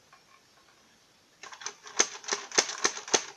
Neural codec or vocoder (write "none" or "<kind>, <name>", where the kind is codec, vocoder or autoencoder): none